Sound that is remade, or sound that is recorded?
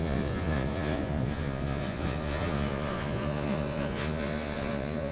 remade